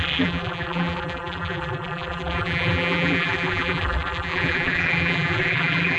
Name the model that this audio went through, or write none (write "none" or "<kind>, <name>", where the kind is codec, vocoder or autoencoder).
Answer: vocoder, BigVGAN v2